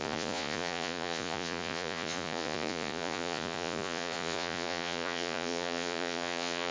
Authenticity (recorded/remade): remade